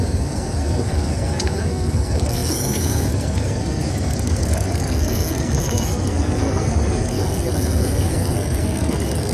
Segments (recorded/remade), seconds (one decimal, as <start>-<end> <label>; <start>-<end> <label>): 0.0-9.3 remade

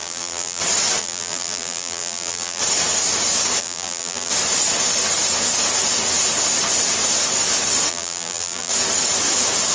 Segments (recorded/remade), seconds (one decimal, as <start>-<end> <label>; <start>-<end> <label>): 0.0-0.6 remade; 0.6-1.0 recorded; 1.0-2.6 remade; 2.6-3.6 recorded; 3.6-4.3 remade; 4.3-7.9 recorded; 7.9-8.7 remade; 8.7-9.7 recorded

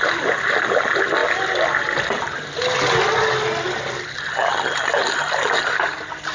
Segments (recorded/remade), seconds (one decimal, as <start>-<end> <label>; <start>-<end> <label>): 0.0-6.3 recorded

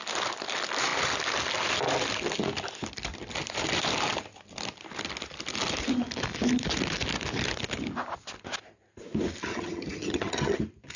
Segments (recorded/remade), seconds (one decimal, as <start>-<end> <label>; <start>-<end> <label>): 0.0-9.5 recorded; 9.5-10.6 remade; 10.6-11.0 recorded